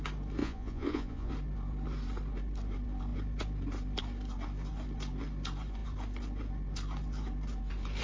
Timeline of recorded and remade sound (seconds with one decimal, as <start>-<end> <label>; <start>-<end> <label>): 0.0-0.4 recorded; 0.4-1.3 remade; 1.3-8.0 recorded